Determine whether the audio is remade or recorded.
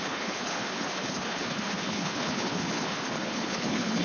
remade